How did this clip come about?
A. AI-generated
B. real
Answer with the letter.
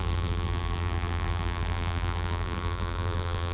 A